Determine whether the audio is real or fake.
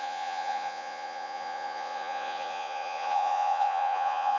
fake